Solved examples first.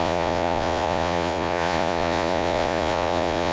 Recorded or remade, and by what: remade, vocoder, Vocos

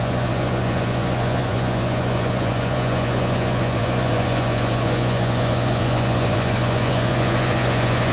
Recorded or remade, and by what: remade, vocoder, Vocos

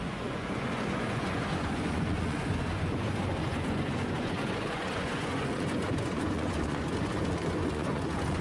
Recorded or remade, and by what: remade, vocoder, Vocos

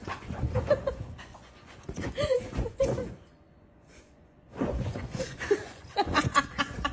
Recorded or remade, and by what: remade, vocoder, Vocos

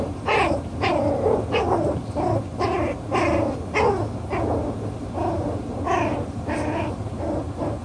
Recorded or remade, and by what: recorded